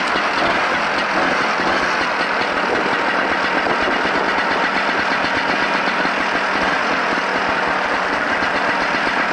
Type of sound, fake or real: real